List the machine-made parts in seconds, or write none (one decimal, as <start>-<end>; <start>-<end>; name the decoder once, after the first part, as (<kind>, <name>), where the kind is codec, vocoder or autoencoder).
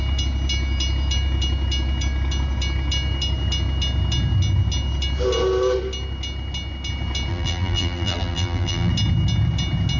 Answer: 7.3-8.9 (vocoder, BigVGAN v2)